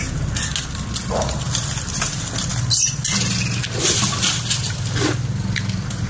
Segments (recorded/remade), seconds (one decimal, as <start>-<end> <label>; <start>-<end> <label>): 0.0-6.1 recorded